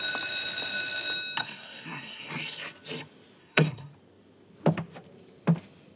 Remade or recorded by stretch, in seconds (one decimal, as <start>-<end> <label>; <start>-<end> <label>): 0.0-1.4 recorded; 1.4-2.3 remade; 2.3-3.4 recorded; 3.4-3.9 remade; 3.9-6.0 recorded